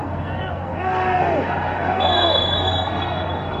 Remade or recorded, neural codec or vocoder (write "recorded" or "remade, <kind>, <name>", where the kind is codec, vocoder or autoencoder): remade, codec, SNAC